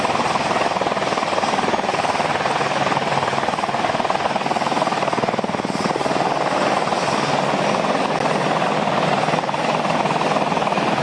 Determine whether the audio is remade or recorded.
recorded